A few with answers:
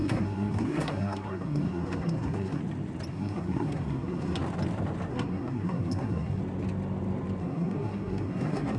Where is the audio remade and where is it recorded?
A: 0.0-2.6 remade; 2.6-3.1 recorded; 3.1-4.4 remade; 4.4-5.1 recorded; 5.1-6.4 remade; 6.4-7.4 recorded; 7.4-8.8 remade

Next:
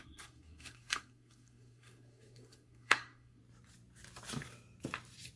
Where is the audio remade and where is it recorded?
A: 0.0-3.4 remade; 3.4-5.4 recorded

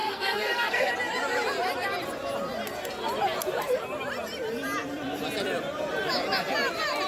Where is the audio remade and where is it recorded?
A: 0.0-0.9 remade; 0.9-7.1 recorded

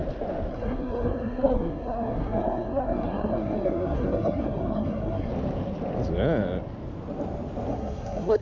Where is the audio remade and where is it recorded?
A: 0.0-0.5 recorded; 0.5-5.3 remade; 5.3-7.7 recorded; 7.7-8.4 remade

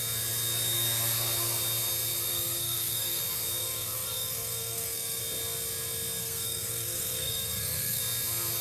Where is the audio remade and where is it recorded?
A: 0.0-2.3 recorded; 2.3-3.2 remade; 3.2-3.6 recorded; 3.6-5.2 remade; 5.2-6.2 recorded; 6.2-8.0 remade; 8.0-8.6 recorded

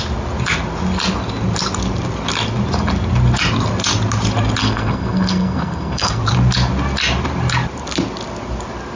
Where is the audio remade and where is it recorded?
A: 0.0-4.6 recorded; 4.6-6.2 remade; 6.2-9.0 recorded

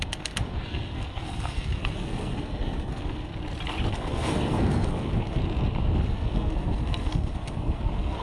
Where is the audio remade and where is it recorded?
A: 0.0-3.3 remade; 3.3-3.9 recorded; 3.9-5.4 remade; 5.4-6.1 recorded; 6.1-8.2 remade

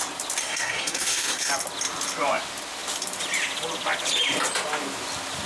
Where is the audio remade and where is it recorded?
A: 0.0-0.4 recorded; 0.4-1.5 remade; 1.5-5.5 recorded